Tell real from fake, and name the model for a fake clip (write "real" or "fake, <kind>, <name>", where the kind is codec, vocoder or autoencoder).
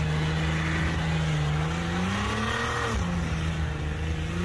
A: real